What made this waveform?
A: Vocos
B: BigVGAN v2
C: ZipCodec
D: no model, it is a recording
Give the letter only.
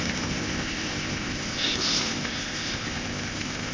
C